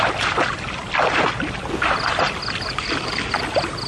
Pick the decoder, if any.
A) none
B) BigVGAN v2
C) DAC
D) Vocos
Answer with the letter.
A